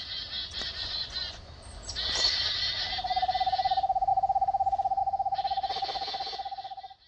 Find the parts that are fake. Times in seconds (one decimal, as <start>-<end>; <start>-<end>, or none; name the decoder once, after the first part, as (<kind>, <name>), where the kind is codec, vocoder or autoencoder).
0.5-1.5 (vocoder, Vocos)